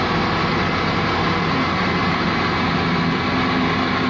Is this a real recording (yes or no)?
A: yes